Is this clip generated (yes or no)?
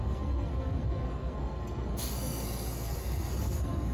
yes